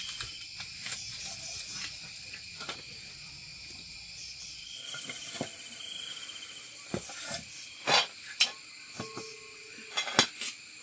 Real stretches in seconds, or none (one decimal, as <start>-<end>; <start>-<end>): 0.0-10.8

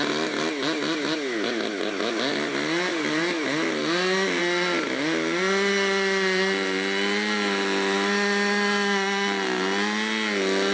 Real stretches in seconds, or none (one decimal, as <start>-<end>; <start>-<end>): 0.0-10.7

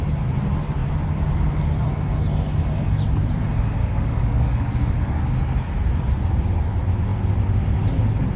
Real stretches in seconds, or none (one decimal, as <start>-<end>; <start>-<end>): 0.0-3.8; 5.2-8.4

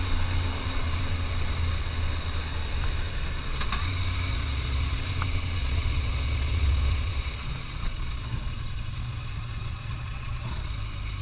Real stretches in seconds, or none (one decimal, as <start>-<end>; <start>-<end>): 0.0-4.3; 5.0-5.6; 10.7-11.2

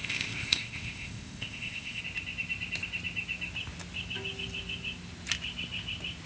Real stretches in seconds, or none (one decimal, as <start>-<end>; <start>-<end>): 2.0-6.3

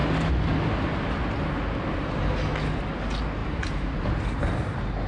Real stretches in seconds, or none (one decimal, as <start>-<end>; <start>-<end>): 0.0-3.4; 4.1-5.1

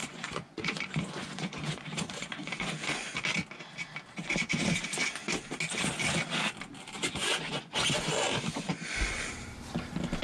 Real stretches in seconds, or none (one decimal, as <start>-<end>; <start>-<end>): 3.2-7.2; 9.3-10.2